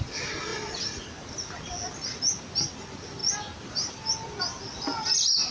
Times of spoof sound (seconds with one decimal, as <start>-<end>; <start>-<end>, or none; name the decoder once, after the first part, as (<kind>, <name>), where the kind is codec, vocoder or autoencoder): none